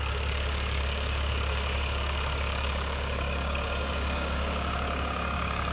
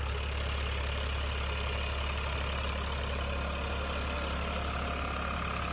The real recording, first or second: second